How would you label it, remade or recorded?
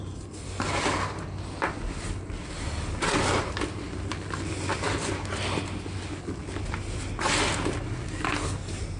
recorded